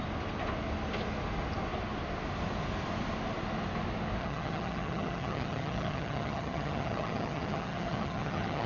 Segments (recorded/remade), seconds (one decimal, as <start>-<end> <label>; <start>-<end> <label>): 0.0-4.2 recorded; 4.2-8.7 remade